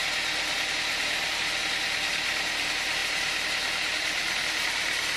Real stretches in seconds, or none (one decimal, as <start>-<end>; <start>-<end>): 0.0-2.5